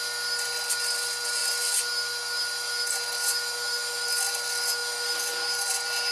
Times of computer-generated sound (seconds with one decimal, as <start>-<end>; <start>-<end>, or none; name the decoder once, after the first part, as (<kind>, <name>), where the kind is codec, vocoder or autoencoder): none